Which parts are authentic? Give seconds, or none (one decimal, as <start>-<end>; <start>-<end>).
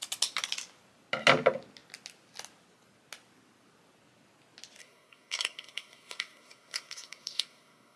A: 0.0-4.8